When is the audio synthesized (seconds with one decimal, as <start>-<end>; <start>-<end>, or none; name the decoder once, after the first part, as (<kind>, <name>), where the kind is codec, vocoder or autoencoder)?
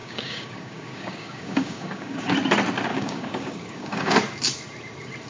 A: 0.0-2.3 (codec, DAC); 2.9-4.1